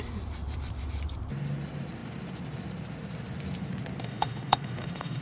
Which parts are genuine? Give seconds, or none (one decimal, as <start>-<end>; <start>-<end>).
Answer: 0.0-4.0